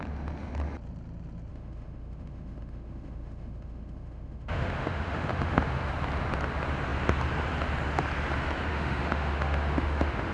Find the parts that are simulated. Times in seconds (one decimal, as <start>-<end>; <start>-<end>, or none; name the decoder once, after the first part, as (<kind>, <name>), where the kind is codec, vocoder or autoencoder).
1.5-5.9 (autoencoder, DAC-VAE); 8.7-10.3